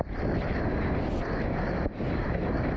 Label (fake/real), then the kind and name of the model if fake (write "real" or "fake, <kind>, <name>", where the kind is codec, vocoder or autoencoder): real